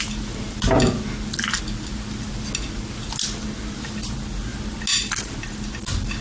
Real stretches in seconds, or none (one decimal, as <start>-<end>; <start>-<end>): 0.0-6.2